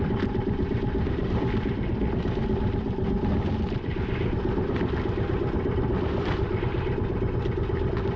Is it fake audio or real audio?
real